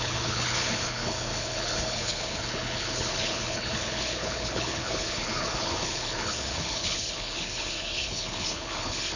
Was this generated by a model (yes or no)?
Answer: yes